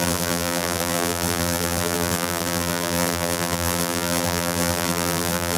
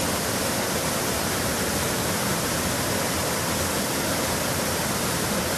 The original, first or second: second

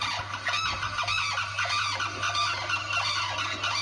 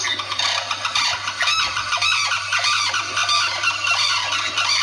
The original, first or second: first